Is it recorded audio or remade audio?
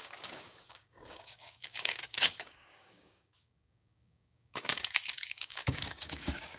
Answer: remade